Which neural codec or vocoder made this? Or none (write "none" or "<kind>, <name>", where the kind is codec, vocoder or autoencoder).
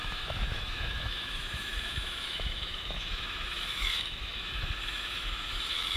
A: autoencoder, DAC-VAE